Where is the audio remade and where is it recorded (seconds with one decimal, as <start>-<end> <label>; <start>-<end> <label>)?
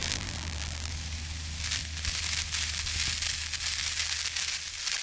0.0-0.9 remade; 0.9-5.0 recorded